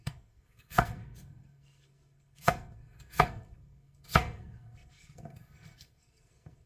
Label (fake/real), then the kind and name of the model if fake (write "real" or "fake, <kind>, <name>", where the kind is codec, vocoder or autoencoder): fake, codec, SNAC